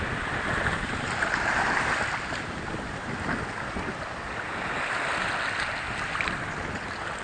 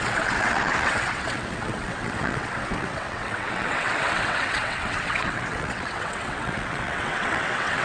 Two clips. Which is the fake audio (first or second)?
second